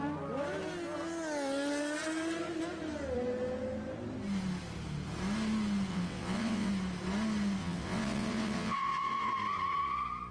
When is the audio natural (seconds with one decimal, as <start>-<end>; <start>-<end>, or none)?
0.0-5.9; 6.7-7.6; 9.3-10.3